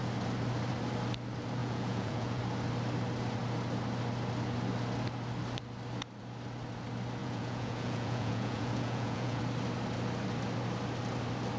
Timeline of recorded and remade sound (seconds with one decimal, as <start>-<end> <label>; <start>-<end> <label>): 0.0-1.6 recorded; 1.6-2.4 remade; 2.4-7.2 recorded; 7.2-9.4 remade; 9.4-11.6 recorded